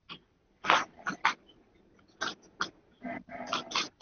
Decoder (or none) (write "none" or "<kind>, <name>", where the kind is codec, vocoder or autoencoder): none